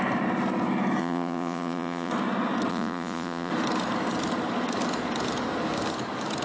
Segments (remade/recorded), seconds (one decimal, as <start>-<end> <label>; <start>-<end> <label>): 0.0-1.0 recorded; 1.0-2.1 remade; 2.1-2.7 recorded; 2.7-3.5 remade; 3.5-6.4 recorded